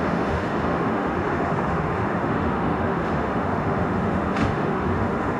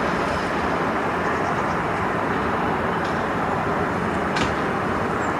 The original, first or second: second